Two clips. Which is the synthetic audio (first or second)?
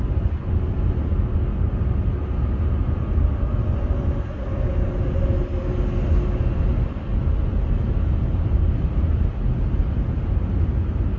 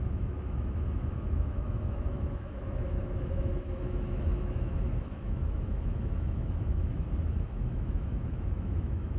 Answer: second